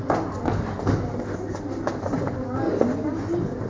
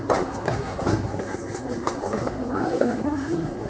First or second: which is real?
first